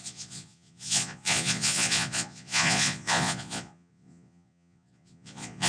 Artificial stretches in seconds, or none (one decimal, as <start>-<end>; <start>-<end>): 0.0-5.7